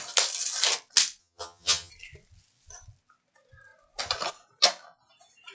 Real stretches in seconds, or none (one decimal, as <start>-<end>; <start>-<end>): 0.0-1.2; 1.9-5.5